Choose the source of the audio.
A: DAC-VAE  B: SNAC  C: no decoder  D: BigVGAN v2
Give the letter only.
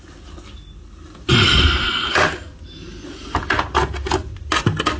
C